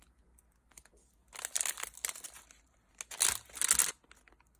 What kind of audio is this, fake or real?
real